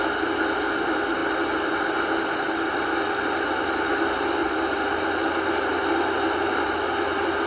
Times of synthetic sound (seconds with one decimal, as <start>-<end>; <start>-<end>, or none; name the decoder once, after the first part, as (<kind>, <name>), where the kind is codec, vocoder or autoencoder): 4.4-7.5 (vocoder, BigVGAN v2)